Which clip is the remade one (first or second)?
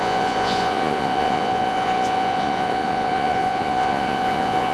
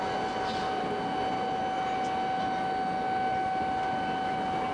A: first